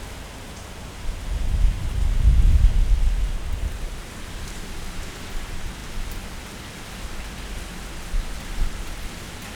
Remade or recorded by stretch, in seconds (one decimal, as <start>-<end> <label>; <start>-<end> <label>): 0.0-9.5 recorded

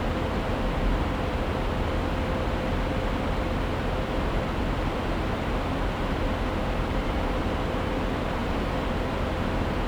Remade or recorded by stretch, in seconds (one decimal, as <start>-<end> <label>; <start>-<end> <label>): 0.0-6.6 recorded; 6.6-7.4 remade; 7.4-8.4 recorded; 8.4-8.9 remade; 8.9-9.9 recorded

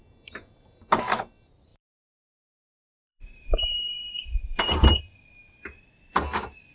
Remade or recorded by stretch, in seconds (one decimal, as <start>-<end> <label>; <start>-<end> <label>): 0.0-1.7 recorded; 1.7-5.0 remade; 5.0-6.7 recorded

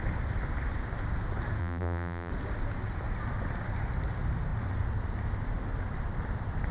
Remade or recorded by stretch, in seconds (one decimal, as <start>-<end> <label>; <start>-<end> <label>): 0.0-1.6 recorded; 1.6-2.3 remade; 2.3-6.7 recorded